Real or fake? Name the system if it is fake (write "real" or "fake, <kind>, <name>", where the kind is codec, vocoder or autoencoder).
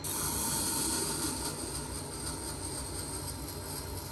real